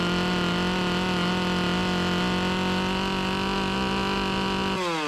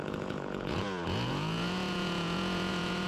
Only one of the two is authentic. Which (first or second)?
first